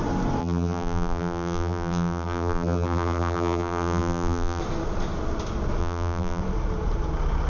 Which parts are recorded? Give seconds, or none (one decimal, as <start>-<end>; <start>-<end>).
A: 0.0-0.4; 4.6-5.8; 6.4-7.5